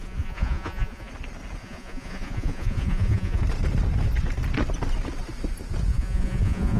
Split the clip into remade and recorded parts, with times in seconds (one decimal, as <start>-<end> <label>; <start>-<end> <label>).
0.0-1.1 remade; 1.1-1.6 recorded; 1.6-3.4 remade; 3.4-5.9 recorded; 5.9-6.8 remade